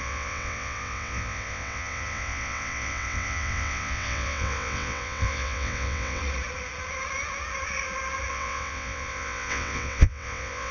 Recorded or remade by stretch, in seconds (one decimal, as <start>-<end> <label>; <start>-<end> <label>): 0.0-6.2 remade; 6.2-8.3 recorded; 8.3-10.7 remade